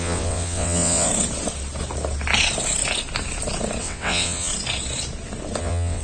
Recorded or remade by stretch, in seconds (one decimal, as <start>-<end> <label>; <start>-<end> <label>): 0.0-1.1 remade; 1.1-3.8 recorded; 3.8-4.5 remade; 4.5-5.6 recorded; 5.6-6.0 remade